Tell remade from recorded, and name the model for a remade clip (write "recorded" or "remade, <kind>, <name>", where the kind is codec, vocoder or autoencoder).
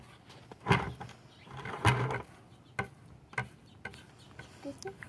recorded